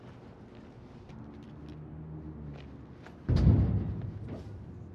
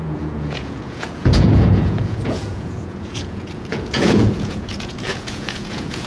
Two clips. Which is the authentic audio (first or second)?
first